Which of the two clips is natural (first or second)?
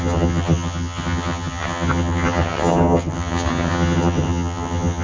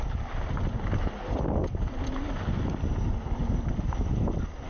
second